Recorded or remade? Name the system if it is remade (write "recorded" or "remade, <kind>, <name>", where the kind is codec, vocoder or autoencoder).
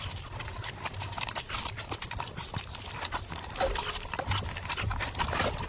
recorded